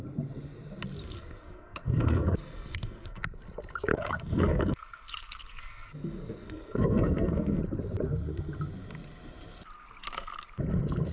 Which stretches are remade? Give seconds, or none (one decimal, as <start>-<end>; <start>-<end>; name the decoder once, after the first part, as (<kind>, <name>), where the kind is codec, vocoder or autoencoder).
1.0-3.2 (codec, SNAC); 3.9-7.6